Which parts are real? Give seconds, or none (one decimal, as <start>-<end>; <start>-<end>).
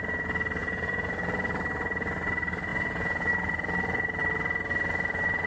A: 0.0-0.6; 1.1-2.7; 3.3-5.5